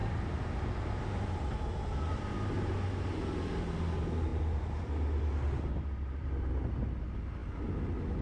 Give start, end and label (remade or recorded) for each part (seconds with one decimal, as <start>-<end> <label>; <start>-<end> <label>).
0.0-8.2 recorded